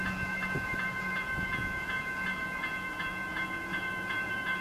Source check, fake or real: fake